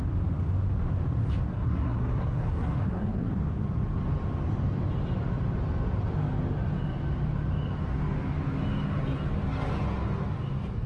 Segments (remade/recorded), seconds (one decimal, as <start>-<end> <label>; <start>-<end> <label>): 0.0-1.5 recorded; 1.5-3.3 remade; 3.3-10.9 recorded